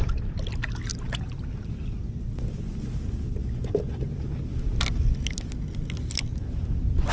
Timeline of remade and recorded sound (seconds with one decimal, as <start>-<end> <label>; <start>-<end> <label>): 0.0-7.1 recorded